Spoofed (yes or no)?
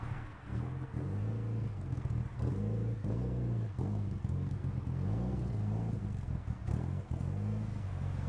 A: yes